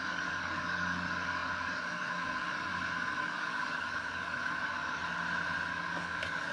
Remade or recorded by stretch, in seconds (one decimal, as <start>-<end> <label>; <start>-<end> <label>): 0.0-2.7 remade; 2.7-3.2 recorded; 3.2-5.0 remade; 5.0-5.7 recorded; 5.7-6.5 remade